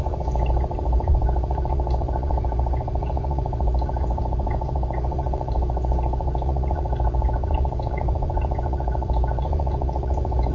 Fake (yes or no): yes